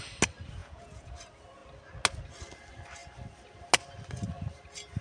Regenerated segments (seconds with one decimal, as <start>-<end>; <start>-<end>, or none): 0.6-1.1